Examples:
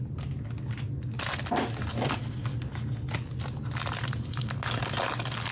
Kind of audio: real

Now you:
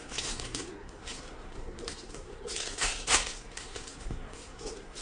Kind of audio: fake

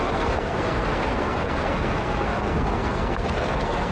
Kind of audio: fake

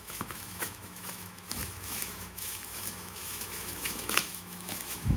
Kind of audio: fake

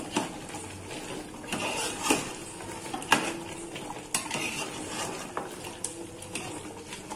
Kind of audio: real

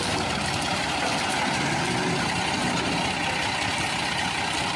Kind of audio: real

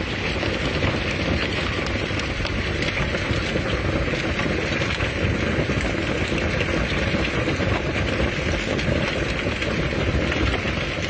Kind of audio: real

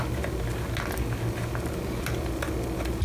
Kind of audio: real